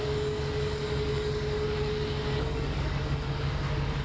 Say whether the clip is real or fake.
fake